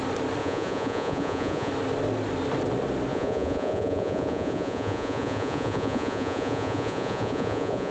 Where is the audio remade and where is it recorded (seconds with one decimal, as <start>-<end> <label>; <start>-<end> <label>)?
0.0-0.4 recorded; 0.4-1.7 remade; 1.7-3.1 recorded; 3.1-7.9 remade